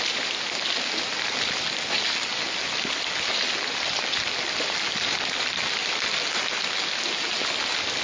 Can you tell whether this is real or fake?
real